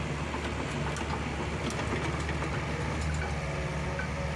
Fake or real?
real